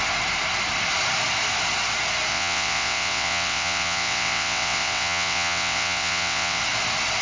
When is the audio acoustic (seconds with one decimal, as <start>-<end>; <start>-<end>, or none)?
0.0-2.3; 6.6-7.2